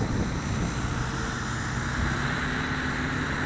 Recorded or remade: recorded